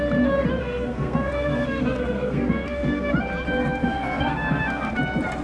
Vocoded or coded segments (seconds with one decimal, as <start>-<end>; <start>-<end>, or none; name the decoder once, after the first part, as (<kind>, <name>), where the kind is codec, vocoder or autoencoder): 0.6-3.1 (codec, SNAC); 3.8-4.9